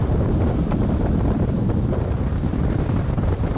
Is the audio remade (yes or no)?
yes